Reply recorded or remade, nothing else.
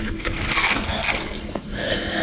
remade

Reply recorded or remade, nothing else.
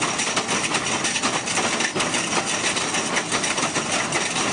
recorded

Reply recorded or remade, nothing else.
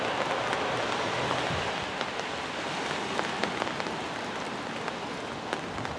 recorded